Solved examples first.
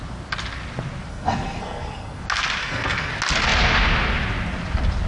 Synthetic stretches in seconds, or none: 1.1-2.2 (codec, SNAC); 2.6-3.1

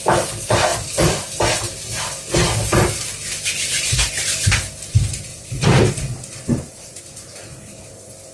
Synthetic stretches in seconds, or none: 5.3-7.0 (vocoder, BigVGAN v2)

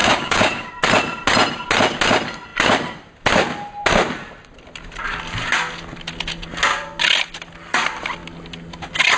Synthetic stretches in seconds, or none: 0.0-0.7 (codec, DAC)

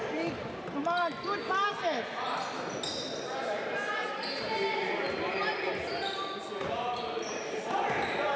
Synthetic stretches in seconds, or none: 0.0-0.8 (vocoder, BigVGAN v2); 4.1-8.4

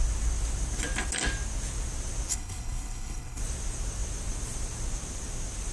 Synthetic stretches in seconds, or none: 2.3-3.4 (codec, HILCodec)

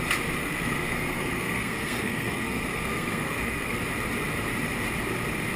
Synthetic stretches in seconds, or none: 0.4-3.8 (codec, SNAC)